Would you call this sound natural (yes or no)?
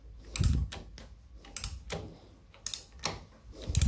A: yes